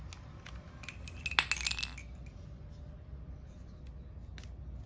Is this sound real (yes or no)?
yes